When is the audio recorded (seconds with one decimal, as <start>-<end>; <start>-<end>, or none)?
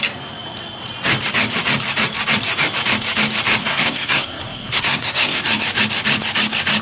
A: 0.0-3.6; 5.4-6.8